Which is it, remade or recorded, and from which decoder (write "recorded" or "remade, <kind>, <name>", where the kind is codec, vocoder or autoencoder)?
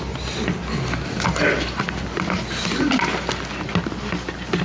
recorded